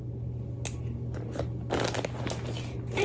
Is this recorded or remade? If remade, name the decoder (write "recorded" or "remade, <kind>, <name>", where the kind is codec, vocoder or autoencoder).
recorded